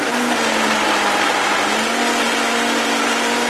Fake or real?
real